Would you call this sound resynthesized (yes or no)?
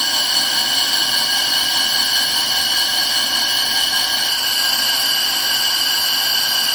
no